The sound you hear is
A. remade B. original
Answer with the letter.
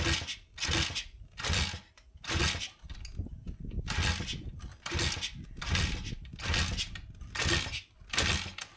B